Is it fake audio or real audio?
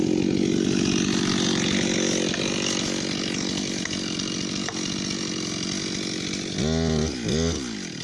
real